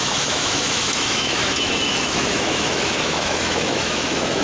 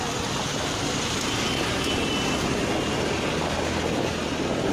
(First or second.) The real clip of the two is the second